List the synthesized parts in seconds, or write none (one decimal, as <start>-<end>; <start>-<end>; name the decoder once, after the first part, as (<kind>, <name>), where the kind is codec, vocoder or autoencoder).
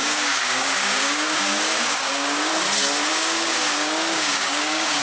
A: 0.0-2.5 (codec, DAC); 3.1-5.0